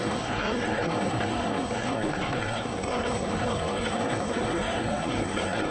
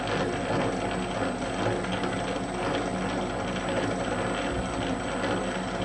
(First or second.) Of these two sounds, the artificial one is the first